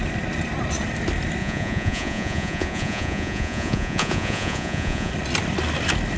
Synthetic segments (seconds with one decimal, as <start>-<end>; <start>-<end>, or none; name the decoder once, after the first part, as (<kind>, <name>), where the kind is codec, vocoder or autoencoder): 1.4-5.1 (vocoder, Vocos)